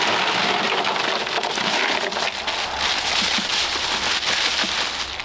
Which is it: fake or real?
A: real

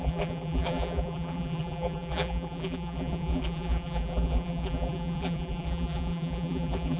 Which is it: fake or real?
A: fake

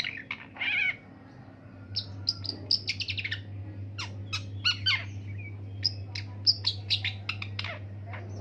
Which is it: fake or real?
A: real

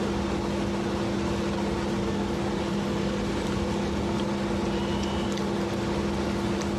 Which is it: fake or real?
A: real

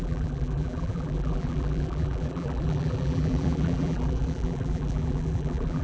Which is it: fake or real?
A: fake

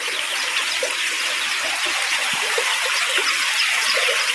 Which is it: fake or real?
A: real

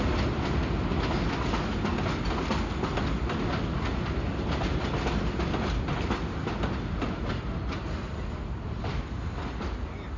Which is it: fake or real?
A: real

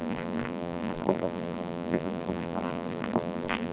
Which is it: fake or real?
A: fake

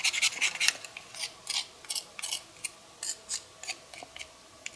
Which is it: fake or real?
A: real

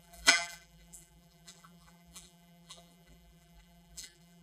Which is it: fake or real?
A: fake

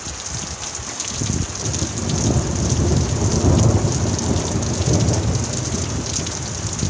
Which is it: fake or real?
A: real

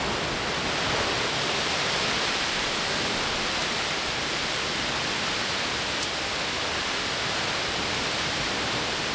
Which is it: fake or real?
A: fake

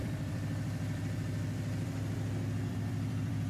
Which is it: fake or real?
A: fake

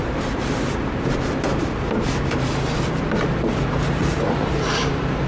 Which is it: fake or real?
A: fake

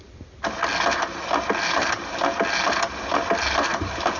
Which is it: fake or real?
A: real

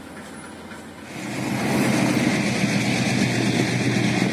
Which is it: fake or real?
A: real